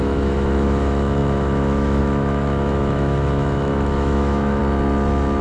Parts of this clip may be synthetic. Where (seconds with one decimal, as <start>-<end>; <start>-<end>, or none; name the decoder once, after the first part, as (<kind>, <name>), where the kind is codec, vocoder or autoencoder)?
0.0-4.6 (autoencoder, DAC-VAE)